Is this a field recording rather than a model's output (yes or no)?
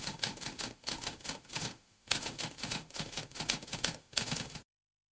no